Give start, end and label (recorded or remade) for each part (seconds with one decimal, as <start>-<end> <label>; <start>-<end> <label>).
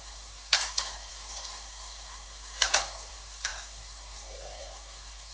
0.0-5.3 remade